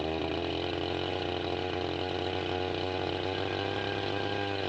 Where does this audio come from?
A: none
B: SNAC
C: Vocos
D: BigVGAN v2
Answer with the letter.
A